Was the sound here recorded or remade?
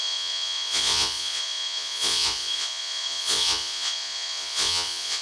remade